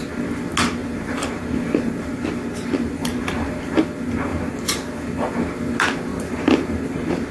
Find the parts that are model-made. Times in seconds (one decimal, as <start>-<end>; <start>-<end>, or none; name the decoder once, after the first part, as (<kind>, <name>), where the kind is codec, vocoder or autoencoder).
0.8-2.3 (vocoder, BigVGAN v2); 3.0-3.8; 4.3-5.3; 6.1-7.3